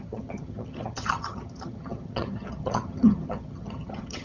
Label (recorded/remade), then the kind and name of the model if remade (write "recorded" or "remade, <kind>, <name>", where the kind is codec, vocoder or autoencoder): remade, vocoder, HiFi-GAN